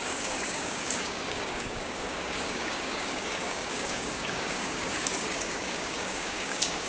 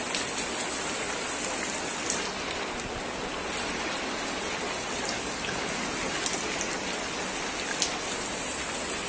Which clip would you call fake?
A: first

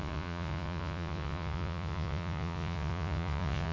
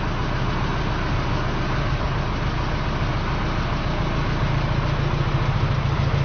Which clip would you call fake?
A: first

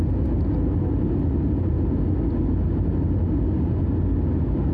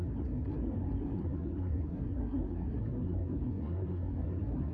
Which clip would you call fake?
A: second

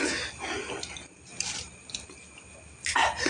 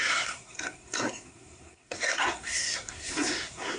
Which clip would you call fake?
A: second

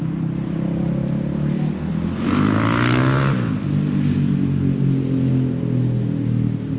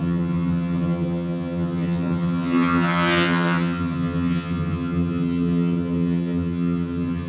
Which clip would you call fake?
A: second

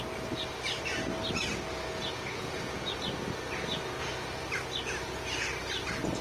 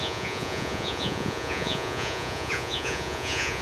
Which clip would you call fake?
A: second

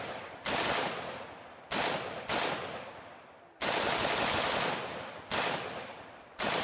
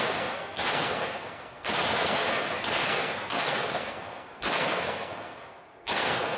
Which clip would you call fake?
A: second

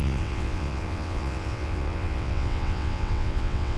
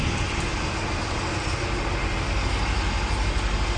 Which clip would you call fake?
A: first